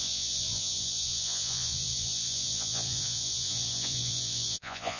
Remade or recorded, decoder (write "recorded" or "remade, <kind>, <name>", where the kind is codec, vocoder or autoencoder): remade, vocoder, Vocos